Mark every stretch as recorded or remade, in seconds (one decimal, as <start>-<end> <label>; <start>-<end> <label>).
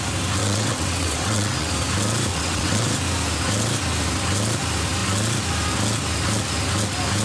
0.0-0.4 recorded; 0.4-1.7 remade; 1.7-2.3 recorded; 2.3-2.9 remade; 2.9-7.2 recorded